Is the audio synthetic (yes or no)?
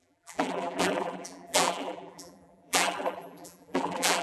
yes